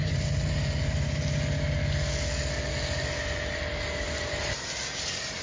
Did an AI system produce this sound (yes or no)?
no